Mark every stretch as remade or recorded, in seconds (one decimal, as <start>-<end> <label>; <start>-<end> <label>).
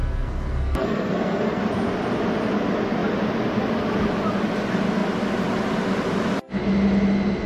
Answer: 0.0-1.6 remade; 1.6-7.5 recorded